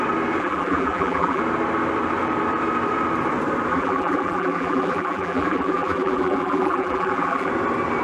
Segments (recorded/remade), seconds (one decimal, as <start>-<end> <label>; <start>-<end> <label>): 0.0-0.4 recorded; 0.4-1.4 remade; 1.4-3.7 recorded; 3.7-7.5 remade; 7.5-8.0 recorded